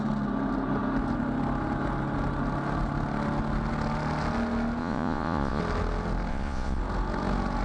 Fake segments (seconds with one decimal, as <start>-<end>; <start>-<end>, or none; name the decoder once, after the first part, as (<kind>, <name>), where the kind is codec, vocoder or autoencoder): 4.8-5.6 (vocoder, Vocos); 6.3-6.8